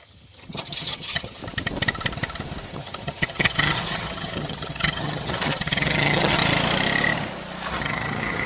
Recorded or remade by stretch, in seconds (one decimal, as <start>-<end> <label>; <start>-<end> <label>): 0.0-1.4 remade; 1.4-2.7 recorded; 2.7-6.4 remade; 6.4-7.7 recorded; 7.7-8.5 remade